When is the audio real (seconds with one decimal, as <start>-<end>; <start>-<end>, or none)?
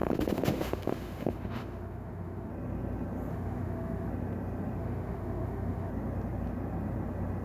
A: 2.5-3.3; 4.1-4.8; 5.9-7.4